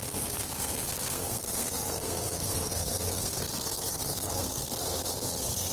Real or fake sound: fake